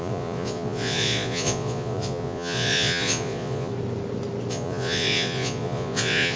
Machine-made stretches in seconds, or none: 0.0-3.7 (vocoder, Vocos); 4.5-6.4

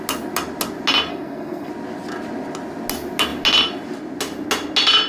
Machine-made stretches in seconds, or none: 1.1-1.7 (codec, SNAC)

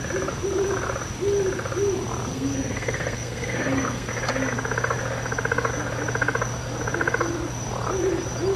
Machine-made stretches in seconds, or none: 2.3-4.1 (codec, SNAC)

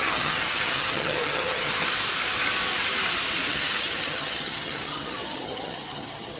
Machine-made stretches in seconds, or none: 0.0-1.7 (vocoder, HiFi-GAN); 3.5-6.4

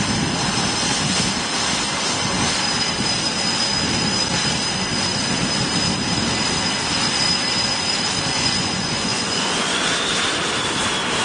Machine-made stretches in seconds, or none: 8.3-9.9 (vocoder, Vocos)

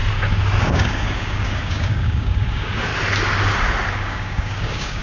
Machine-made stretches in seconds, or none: 0.6-2.9 (codec, DAC); 3.9-5.0

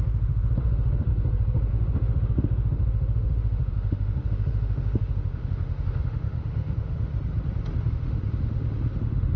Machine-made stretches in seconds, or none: 0.0-1.1 (autoencoder, DAC-VAE); 1.7-7.1; 7.9-9.4